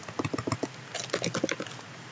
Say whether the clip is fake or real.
real